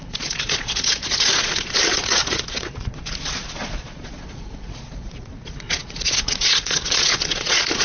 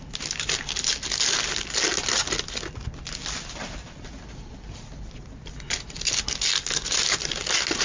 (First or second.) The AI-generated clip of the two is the first